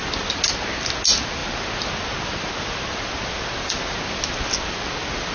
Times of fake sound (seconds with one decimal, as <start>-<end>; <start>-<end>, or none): none